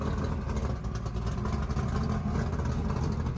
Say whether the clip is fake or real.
real